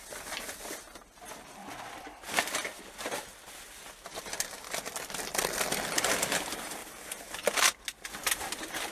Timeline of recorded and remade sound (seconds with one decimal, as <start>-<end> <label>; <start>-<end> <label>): 0.0-1.6 recorded; 1.6-3.9 remade; 3.9-8.9 recorded